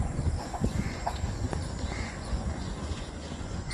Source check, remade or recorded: remade